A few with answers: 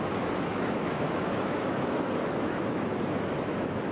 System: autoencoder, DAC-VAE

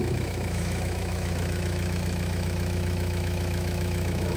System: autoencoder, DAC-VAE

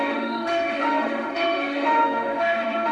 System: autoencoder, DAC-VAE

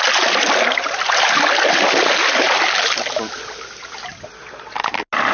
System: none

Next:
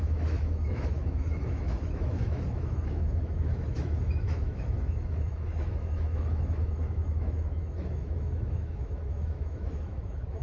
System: autoencoder, DAC-VAE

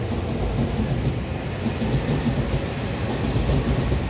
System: none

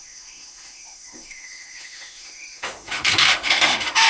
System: autoencoder, DAC-VAE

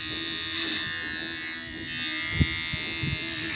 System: none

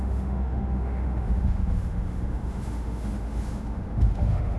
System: autoencoder, DAC-VAE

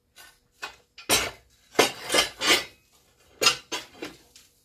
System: none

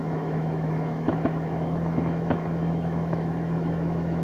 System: autoencoder, DAC-VAE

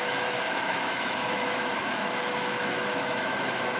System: autoencoder, DAC-VAE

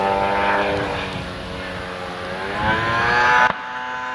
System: none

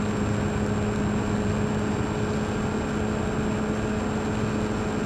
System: none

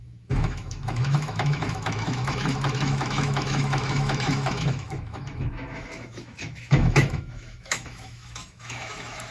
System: autoencoder, DAC-VAE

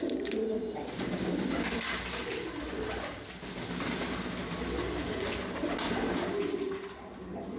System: none